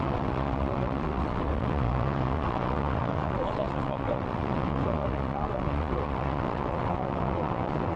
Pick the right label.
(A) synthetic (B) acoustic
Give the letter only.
A